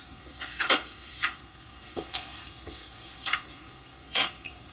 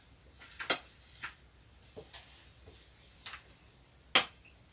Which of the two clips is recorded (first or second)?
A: second